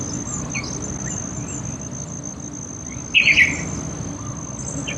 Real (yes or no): yes